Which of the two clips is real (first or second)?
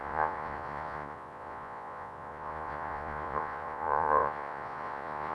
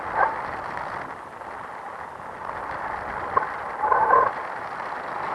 second